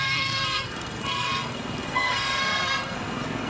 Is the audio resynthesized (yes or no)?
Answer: yes